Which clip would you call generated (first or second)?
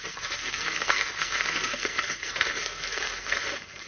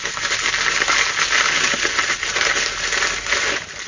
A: first